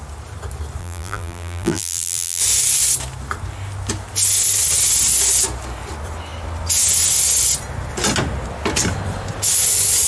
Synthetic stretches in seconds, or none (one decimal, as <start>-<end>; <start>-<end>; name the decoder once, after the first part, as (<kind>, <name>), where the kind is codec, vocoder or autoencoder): 0.8-2.4 (vocoder, BigVGAN v2)